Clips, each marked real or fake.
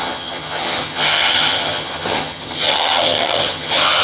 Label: fake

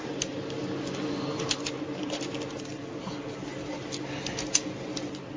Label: real